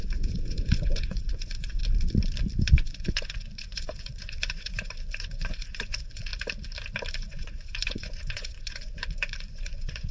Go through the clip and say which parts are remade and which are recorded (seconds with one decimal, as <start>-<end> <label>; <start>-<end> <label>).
0.0-1.8 remade; 1.8-2.6 recorded; 2.6-6.3 remade; 6.3-7.1 recorded; 7.1-10.1 remade